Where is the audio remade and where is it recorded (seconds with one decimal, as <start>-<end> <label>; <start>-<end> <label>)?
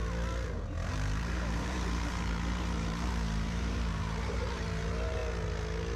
0.0-0.9 recorded; 0.9-5.2 remade; 5.2-6.0 recorded